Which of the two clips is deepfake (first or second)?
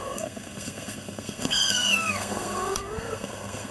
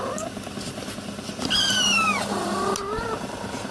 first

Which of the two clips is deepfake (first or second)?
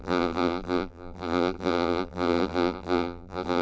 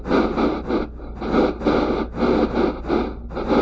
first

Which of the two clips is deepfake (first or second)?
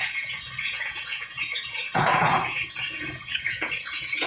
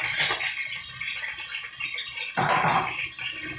first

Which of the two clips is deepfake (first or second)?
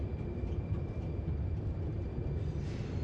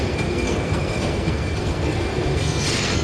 second